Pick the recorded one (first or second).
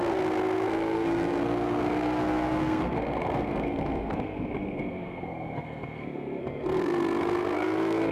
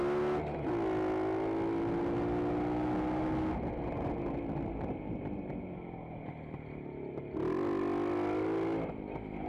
second